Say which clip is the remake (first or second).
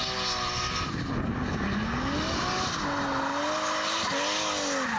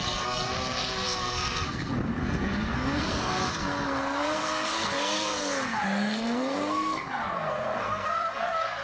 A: second